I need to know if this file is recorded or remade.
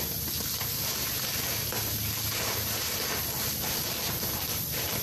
recorded